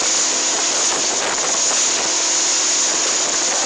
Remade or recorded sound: recorded